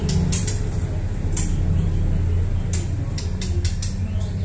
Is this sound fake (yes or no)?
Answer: no